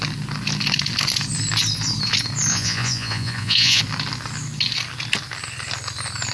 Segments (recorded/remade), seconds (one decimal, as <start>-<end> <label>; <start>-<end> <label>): 0.0-2.5 recorded; 2.5-3.8 remade; 3.8-6.3 recorded

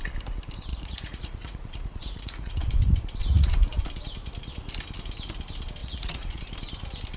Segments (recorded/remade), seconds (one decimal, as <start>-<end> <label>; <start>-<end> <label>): 0.0-0.7 recorded; 0.7-2.6 remade; 2.6-3.2 recorded; 3.2-3.8 remade; 3.8-5.8 recorded; 5.8-6.4 remade; 6.4-7.2 recorded

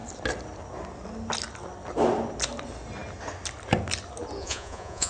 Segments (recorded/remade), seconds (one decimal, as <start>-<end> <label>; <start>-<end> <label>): 0.0-4.4 recorded; 4.4-5.1 remade

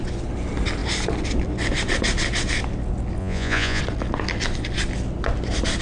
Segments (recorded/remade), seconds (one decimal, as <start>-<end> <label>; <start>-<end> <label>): 0.0-3.2 recorded; 3.2-3.8 remade; 3.8-5.8 recorded

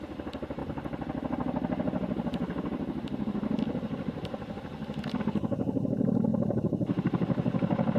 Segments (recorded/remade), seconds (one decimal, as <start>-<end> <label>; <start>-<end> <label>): 0.0-8.0 recorded